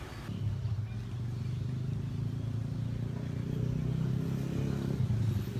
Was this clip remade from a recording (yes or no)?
no